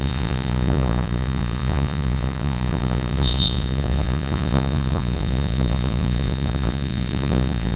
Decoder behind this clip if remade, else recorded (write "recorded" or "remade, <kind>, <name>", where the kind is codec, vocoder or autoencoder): remade, vocoder, Vocos